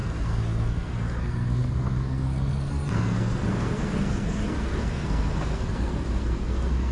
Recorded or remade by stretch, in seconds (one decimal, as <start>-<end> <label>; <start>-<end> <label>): 0.0-6.9 remade